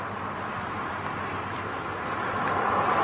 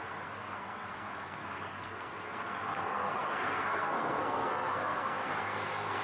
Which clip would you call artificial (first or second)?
second